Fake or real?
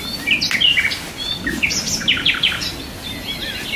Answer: real